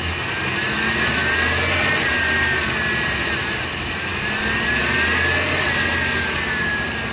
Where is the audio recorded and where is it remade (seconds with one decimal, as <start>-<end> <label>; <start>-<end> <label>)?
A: 0.0-7.1 recorded